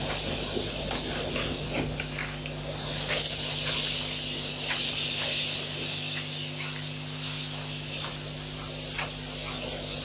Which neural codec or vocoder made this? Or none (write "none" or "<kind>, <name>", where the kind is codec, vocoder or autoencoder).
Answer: none